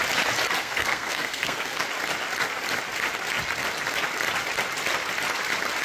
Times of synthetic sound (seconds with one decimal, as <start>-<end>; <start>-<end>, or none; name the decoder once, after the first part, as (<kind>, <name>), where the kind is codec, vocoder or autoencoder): 0.6-1.8 (codec, SNAC)